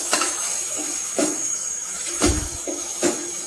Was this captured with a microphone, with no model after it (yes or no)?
no